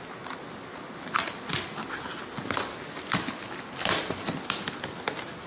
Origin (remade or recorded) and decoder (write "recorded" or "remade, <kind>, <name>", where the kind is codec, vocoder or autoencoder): recorded